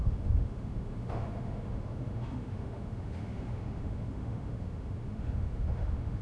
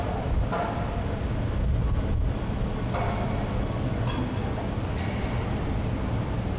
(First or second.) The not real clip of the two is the first